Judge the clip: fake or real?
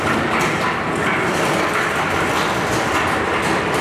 real